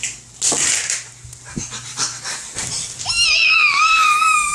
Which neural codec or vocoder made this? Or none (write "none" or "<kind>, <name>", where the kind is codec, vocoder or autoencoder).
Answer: none